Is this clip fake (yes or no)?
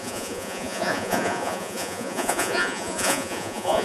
yes